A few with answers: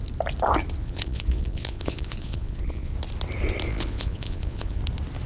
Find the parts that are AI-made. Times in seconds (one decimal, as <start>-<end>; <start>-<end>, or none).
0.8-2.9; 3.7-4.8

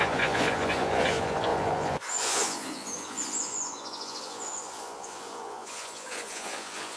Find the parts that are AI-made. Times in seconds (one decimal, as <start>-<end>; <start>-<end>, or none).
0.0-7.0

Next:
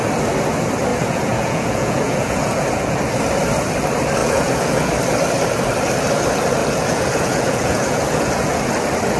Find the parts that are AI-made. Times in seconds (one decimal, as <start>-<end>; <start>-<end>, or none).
0.9-3.1; 4.2-4.9; 6.6-8.6